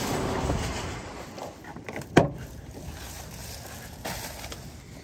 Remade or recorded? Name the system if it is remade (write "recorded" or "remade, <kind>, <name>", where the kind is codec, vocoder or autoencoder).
recorded